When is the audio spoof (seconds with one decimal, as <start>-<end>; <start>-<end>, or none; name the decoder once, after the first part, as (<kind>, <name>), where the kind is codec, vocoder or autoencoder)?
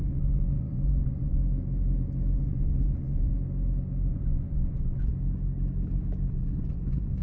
0.0-1.4 (vocoder, Vocos); 2.4-3.3; 4.1-5.1; 6.3-7.2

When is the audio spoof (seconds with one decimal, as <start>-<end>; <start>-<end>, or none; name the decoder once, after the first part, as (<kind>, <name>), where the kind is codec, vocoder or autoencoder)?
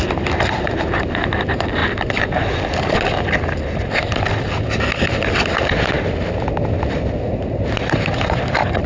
0.0-1.8 (vocoder, BigVGAN v2); 4.0-8.9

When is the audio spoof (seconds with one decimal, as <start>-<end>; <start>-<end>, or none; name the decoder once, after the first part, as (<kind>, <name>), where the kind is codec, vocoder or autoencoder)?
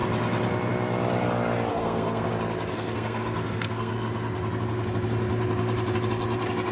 1.7-2.3 (codec, SNAC); 2.7-3.9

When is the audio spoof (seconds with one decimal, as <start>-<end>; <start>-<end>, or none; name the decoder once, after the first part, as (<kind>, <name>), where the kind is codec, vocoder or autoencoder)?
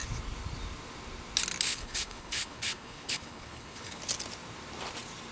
1.7-4.0 (codec, HILCodec)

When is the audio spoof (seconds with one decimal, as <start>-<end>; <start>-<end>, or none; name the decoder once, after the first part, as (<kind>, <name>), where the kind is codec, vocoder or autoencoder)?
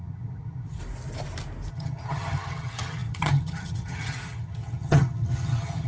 0.0-0.8 (vocoder, HiFi-GAN); 1.7-5.9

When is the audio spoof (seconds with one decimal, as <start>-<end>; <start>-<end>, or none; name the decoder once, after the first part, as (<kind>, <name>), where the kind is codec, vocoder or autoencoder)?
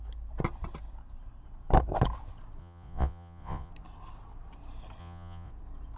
2.6-3.7 (vocoder, Vocos); 5.0-5.5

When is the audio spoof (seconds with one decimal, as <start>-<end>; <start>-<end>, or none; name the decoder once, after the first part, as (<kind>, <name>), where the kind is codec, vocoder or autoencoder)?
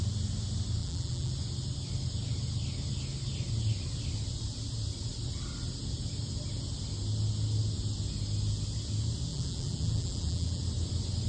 0.8-1.3 (vocoder, BigVGAN v2); 9.3-10.6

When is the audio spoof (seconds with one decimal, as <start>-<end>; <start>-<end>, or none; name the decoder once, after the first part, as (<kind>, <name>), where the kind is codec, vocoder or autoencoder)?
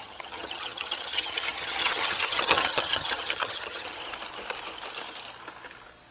0.0-4.0 (vocoder, HiFi-GAN)